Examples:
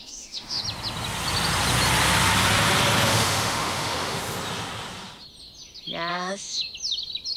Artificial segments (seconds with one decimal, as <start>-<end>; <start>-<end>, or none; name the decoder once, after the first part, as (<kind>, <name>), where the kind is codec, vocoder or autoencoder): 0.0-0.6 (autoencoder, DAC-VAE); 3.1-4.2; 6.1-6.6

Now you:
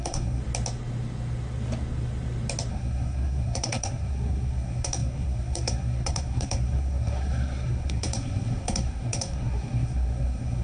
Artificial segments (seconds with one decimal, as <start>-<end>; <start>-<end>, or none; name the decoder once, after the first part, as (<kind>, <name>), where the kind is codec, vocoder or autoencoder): 0.0-0.4 (codec, SNAC); 2.7-10.6

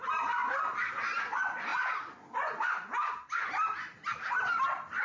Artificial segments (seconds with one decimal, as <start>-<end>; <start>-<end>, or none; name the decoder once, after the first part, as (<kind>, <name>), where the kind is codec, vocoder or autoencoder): none

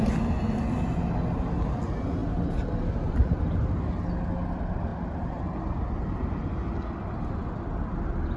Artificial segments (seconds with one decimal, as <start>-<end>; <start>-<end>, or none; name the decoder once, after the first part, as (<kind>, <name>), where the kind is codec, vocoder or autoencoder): none